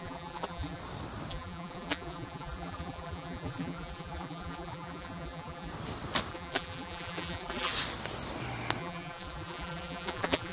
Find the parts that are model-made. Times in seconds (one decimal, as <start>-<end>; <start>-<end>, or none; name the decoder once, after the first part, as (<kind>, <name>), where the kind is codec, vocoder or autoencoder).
0.0-0.8 (vocoder, BigVGAN v2); 1.3-5.7; 6.3-7.7; 8.8-10.5